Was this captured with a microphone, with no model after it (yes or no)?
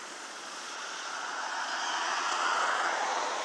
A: no